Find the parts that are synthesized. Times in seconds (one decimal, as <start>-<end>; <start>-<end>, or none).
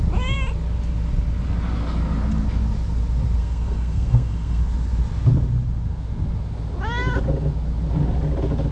3.4-4.6